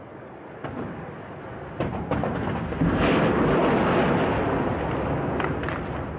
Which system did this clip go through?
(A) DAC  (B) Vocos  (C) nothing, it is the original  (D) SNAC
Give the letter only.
C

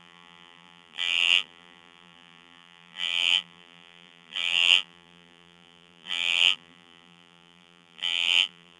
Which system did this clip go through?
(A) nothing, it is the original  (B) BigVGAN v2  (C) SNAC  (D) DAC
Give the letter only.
B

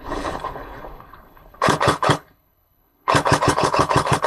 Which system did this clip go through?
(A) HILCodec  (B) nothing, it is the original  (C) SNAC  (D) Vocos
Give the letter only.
A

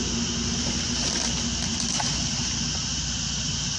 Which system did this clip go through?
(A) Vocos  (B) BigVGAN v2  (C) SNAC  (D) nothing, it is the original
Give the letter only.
D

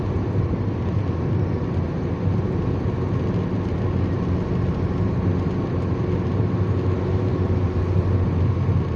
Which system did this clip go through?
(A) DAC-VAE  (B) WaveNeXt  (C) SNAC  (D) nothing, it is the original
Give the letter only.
D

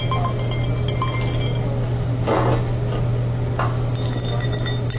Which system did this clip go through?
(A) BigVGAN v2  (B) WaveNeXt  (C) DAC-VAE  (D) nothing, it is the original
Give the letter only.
D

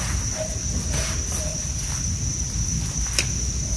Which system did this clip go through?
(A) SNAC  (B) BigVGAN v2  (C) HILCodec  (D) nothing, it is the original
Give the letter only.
D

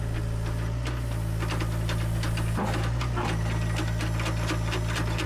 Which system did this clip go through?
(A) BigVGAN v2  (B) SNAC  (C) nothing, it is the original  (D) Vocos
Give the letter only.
C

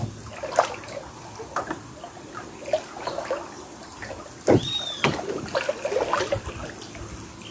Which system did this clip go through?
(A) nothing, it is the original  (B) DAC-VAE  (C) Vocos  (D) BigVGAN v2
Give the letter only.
A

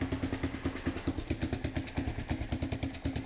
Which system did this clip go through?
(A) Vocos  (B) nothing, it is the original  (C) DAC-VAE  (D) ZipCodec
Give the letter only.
B